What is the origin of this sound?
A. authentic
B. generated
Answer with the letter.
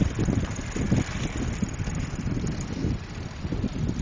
A